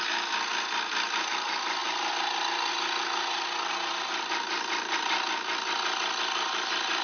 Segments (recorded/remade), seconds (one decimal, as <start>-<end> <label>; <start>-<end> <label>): 0.0-7.0 recorded